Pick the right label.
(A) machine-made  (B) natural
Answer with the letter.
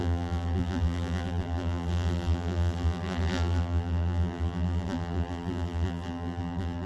A